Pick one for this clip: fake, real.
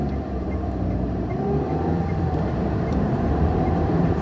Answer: fake